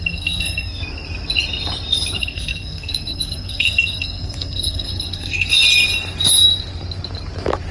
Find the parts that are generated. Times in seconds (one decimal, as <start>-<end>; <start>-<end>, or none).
0.0-0.8; 2.2-5.5